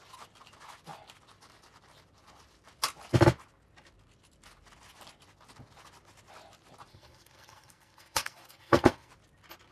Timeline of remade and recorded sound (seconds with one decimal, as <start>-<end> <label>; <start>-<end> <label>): 0.0-6.9 recorded; 6.9-9.1 remade; 9.1-9.7 recorded